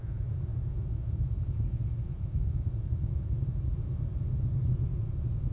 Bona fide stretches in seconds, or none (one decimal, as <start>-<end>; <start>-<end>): 3.7-4.6